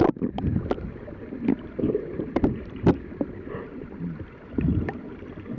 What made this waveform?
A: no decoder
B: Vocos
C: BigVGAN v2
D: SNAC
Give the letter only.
A